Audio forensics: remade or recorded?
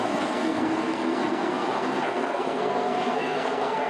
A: remade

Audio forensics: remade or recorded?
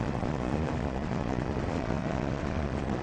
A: remade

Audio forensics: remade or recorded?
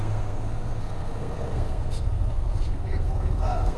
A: remade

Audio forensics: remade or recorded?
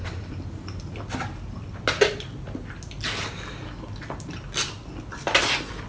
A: recorded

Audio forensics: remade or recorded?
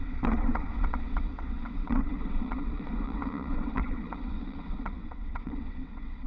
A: remade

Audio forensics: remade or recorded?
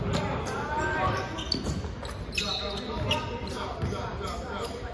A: recorded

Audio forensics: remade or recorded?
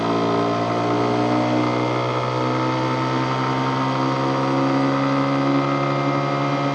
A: recorded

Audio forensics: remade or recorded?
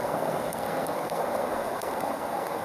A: remade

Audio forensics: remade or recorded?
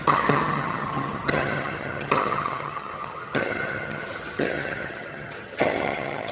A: remade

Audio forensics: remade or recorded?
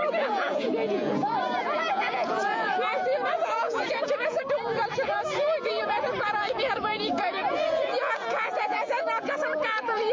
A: remade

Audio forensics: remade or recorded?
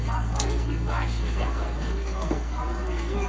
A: remade